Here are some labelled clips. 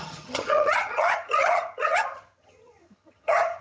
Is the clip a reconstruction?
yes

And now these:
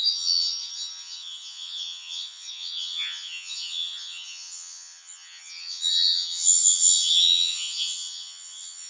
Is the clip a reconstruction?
yes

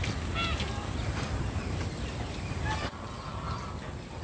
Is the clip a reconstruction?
no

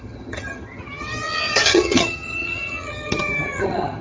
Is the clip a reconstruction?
yes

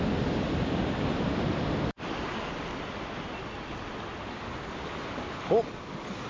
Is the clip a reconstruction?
no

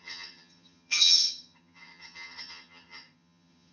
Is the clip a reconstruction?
yes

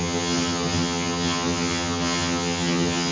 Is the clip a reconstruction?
yes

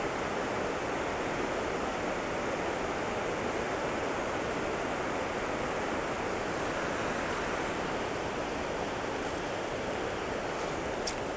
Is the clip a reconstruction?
no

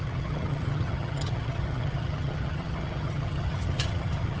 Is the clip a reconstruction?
yes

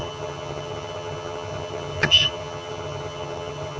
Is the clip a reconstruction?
yes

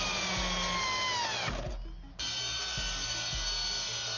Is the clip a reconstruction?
no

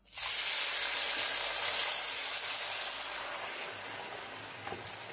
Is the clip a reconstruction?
no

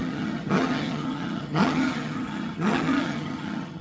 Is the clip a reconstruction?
yes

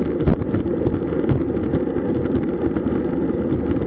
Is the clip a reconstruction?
no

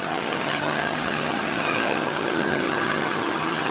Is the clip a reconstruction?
yes